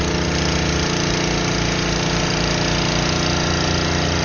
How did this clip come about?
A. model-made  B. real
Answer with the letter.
B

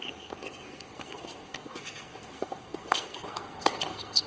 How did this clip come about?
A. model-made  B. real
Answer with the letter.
A